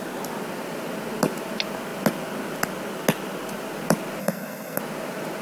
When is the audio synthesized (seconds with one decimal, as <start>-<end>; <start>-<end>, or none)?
4.2-4.8